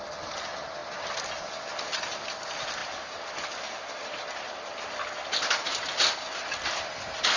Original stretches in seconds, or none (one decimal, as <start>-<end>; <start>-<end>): 0.0-7.4